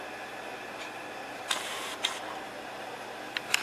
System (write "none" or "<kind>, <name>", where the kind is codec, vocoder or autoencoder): vocoder, BigVGAN v2